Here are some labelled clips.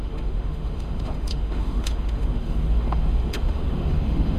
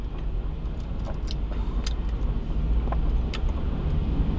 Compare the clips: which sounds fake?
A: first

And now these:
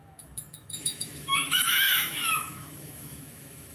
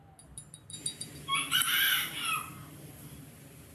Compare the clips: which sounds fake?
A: first